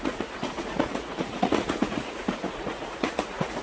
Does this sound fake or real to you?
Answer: fake